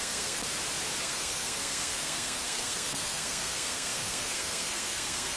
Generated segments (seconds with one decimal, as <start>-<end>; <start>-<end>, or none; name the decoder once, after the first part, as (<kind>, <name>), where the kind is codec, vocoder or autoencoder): 0.0-0.4 (codec, SNAC); 1.0-5.4